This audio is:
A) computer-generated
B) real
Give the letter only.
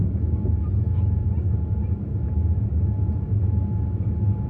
B